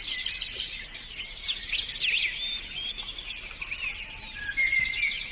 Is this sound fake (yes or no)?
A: no